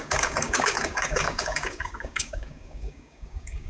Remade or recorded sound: remade